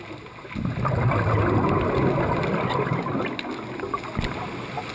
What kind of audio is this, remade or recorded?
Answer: recorded